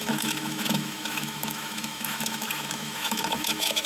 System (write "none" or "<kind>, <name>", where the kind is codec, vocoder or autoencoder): autoencoder, DAC-VAE